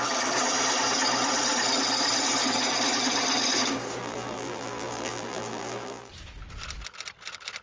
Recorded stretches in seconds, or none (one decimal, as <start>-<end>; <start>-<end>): 0.0-4.0; 6.1-7.6